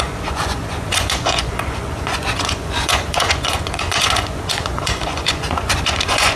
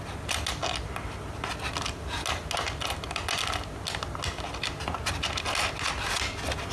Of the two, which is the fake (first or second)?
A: first